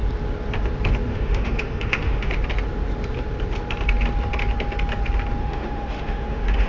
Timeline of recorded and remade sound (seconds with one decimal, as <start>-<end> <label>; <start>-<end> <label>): 0.0-1.1 recorded; 1.1-2.3 remade; 2.3-5.4 recorded; 5.4-6.7 remade